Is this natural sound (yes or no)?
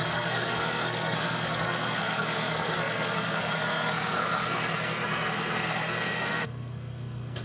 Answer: no